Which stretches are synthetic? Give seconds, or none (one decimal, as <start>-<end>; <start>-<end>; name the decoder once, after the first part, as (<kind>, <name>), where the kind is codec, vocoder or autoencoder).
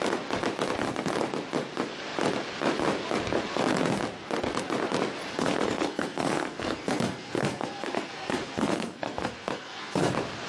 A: 5.3-10.1 (codec, SNAC)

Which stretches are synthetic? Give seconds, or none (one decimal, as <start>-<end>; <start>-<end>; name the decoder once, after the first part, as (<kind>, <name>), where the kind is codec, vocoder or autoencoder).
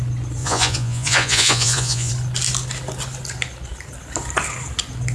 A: 0.4-2.1 (vocoder, Vocos)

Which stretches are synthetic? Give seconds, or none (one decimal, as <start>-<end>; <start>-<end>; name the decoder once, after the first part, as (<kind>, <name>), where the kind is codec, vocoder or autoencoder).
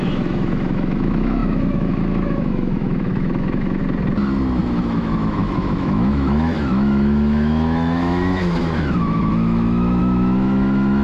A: 0.0-3.8 (autoencoder, DAC-VAE); 4.6-11.0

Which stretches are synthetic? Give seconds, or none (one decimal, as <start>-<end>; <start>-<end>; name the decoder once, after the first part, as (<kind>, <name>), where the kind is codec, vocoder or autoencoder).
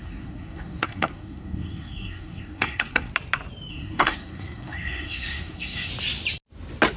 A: 0.0-3.1 (codec, SNAC); 3.7-5.9